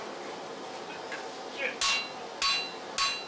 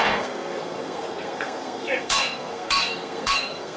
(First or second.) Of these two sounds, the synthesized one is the second